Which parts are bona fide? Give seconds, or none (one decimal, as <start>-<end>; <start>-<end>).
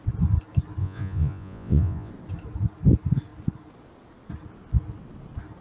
0.0-0.8; 2.1-5.6